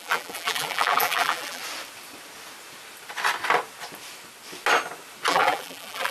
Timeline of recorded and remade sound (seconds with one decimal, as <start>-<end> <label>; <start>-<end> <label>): 0.0-1.6 remade; 1.6-5.3 recorded; 5.3-6.1 remade